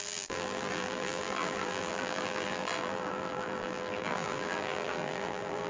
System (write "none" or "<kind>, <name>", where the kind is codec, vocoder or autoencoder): vocoder, BigVGAN v2